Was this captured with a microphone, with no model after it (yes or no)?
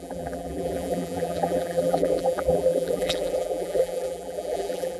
no